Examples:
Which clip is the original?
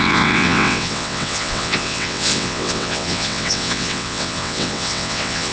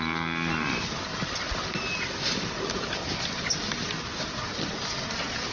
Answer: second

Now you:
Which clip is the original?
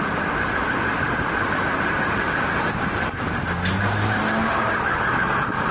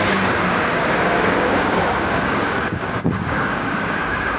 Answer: first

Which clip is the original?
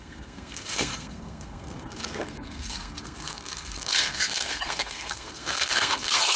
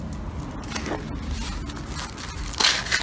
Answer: second